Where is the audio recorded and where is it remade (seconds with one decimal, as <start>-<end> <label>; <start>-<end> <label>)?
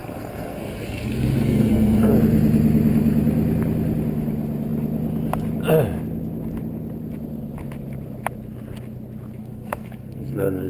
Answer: 0.0-2.1 remade; 2.1-9.4 recorded; 9.4-10.7 remade